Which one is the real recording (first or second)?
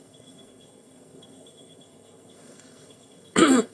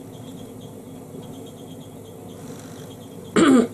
second